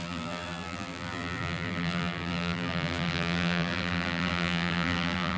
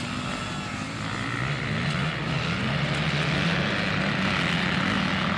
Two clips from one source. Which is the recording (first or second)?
second